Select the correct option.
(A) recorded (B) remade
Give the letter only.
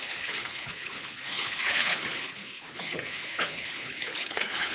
B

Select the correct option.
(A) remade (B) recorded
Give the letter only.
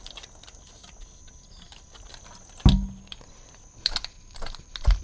B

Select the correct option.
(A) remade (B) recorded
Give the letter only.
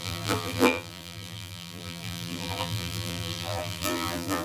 A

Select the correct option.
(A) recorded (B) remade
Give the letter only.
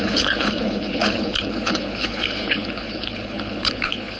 B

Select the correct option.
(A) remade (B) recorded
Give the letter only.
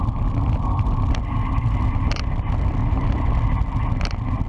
B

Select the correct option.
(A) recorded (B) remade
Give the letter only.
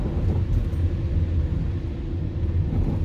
A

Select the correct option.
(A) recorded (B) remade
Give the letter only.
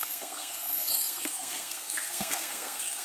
B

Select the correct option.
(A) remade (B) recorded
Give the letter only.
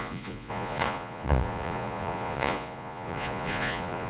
A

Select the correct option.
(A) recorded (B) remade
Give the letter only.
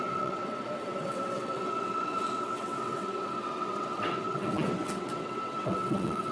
B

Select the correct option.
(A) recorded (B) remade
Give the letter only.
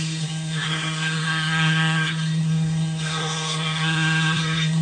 B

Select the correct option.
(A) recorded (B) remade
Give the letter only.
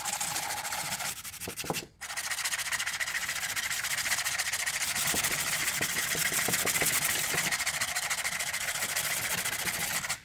A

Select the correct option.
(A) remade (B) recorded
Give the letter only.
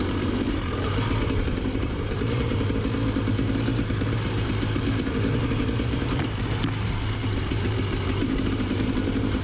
A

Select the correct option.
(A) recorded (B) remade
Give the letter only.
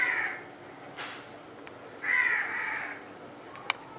A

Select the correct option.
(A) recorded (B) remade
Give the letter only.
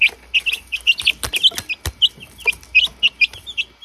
A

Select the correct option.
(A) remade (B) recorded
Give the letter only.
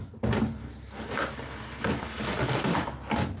B